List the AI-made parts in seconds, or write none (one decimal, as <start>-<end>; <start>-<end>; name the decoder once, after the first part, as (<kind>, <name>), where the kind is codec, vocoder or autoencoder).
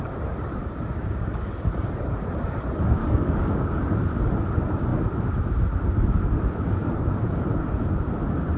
0.6-1.9 (codec, DAC); 3.0-3.8